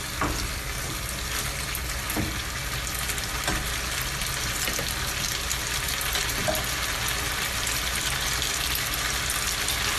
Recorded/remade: recorded